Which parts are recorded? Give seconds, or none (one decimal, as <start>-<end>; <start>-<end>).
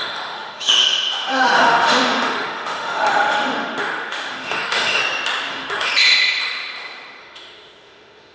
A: 5.0-5.5; 5.9-7.2